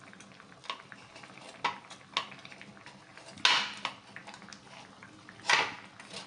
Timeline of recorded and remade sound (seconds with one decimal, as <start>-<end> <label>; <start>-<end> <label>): 0.0-6.3 recorded